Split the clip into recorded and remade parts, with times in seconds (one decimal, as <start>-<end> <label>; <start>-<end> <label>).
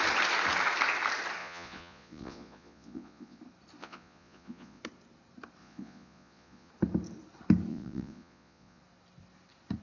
0.0-1.4 recorded; 1.4-3.4 remade; 3.4-3.8 recorded; 3.8-4.8 remade; 4.8-5.6 recorded; 5.6-6.7 remade; 6.7-7.7 recorded; 7.7-8.8 remade; 8.8-9.8 recorded